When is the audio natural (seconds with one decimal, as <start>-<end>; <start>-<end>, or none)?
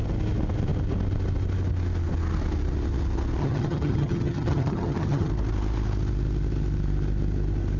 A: 0.0-3.4; 5.3-7.8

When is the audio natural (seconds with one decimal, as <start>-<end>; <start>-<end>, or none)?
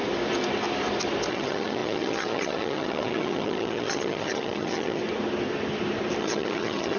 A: 0.0-1.3; 5.0-6.2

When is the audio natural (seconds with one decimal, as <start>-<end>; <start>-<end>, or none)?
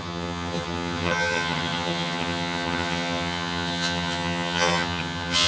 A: none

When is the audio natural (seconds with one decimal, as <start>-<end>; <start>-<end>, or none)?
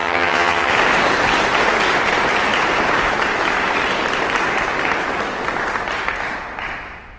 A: 0.7-7.2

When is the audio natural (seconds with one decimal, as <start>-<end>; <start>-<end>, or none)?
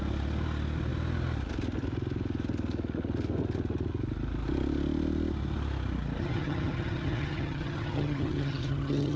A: 0.0-6.2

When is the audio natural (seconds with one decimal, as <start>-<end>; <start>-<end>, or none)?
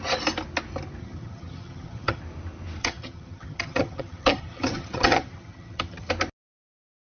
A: 0.0-1.0; 2.2-2.8; 6.1-7.1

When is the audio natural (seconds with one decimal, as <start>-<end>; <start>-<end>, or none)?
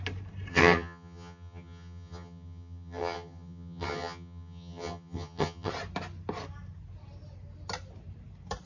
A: 0.0-0.5; 5.7-8.7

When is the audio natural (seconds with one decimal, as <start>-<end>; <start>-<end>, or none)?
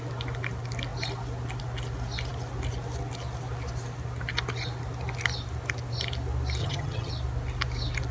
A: 0.0-6.6; 7.1-8.1